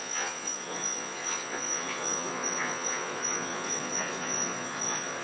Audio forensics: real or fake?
fake